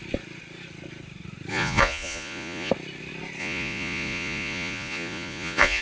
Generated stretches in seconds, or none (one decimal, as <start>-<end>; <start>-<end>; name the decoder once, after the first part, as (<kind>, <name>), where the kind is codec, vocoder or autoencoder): 1.5-2.7 (vocoder, Vocos); 3.4-5.8